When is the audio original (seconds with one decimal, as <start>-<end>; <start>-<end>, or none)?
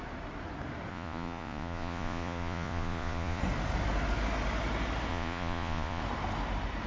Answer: 0.0-0.9; 3.4-5.1; 6.0-6.9